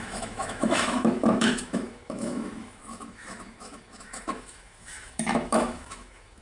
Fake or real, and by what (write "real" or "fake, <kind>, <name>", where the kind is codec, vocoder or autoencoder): fake, autoencoder, DAC-VAE